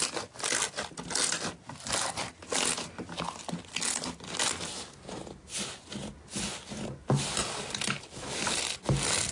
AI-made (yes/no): no